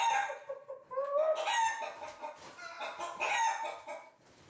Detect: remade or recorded recorded